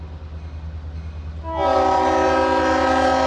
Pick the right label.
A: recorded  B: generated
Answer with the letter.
A